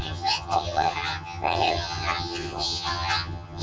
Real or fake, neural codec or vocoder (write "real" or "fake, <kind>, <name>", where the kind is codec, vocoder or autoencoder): fake, vocoder, HiFi-GAN